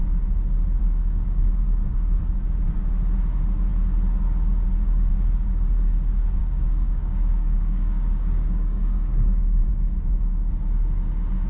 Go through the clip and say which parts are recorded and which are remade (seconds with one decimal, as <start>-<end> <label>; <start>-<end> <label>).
0.0-0.8 recorded; 0.8-2.2 remade; 2.2-6.4 recorded; 6.4-10.5 remade; 10.5-11.5 recorded